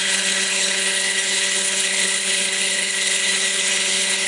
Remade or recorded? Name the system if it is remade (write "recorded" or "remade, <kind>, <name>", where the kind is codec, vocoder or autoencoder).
remade, codec, HILCodec